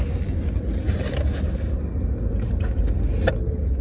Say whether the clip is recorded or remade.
recorded